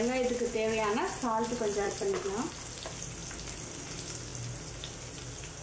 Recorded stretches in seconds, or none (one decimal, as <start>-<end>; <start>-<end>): 0.0-1.7; 2.5-4.3; 5.0-5.6